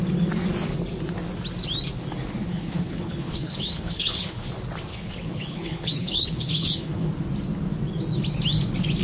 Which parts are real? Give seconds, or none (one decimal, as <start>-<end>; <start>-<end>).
0.0-2.4; 4.5-4.9; 7.1-9.0